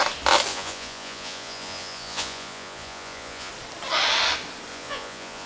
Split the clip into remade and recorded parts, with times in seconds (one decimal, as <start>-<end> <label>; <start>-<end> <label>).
0.0-0.5 recorded; 0.5-3.5 remade; 3.5-4.7 recorded; 4.7-5.5 remade